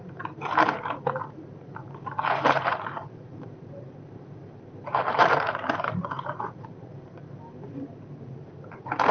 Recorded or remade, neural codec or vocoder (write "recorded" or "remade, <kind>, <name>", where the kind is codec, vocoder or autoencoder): remade, vocoder, BigVGAN v2